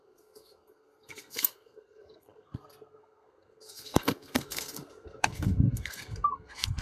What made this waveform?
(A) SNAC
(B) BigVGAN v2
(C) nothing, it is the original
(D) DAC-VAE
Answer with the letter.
A